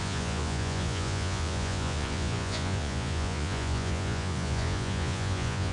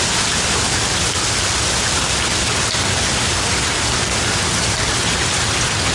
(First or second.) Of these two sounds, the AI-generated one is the first